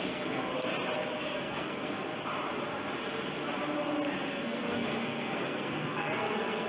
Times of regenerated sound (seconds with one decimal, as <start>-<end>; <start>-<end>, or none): 0.0-0.5; 1.2-2.1; 4.3-6.7